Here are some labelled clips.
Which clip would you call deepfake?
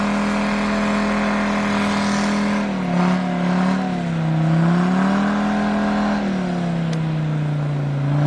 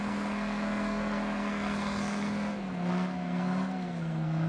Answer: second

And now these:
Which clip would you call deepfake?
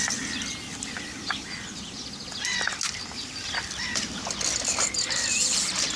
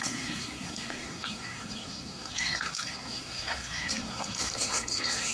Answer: second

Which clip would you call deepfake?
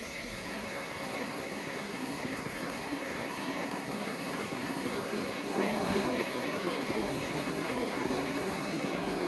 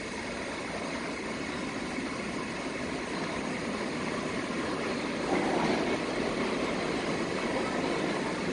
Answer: first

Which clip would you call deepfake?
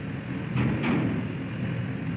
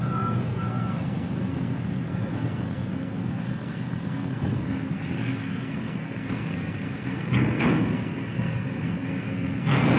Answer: second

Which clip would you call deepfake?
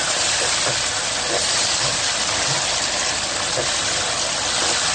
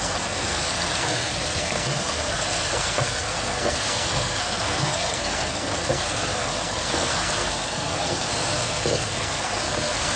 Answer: second